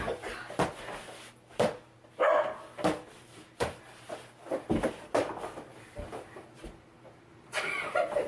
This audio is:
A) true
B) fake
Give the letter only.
B